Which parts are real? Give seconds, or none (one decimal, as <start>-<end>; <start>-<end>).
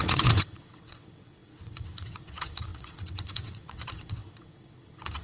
none